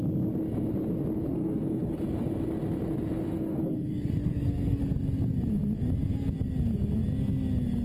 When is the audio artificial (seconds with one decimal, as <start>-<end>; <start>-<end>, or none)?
1.3-2.0; 3.3-4.8